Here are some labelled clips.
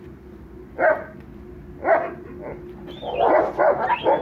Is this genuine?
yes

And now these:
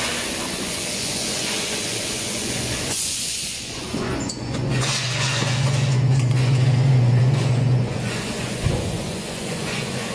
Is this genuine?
no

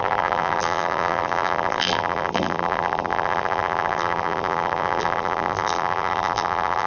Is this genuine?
no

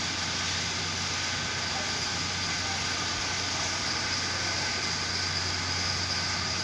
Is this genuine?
yes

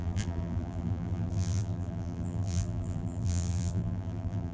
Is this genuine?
no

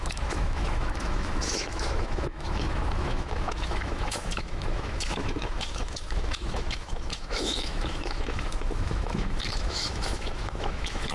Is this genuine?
no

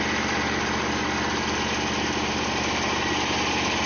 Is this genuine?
yes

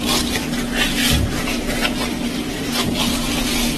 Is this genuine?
yes